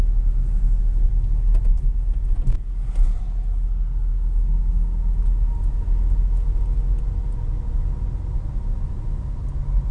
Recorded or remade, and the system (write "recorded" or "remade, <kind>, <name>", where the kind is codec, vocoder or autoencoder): recorded